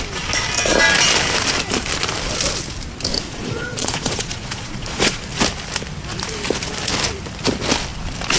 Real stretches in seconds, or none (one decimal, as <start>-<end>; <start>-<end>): 0.0-3.1; 5.2-8.4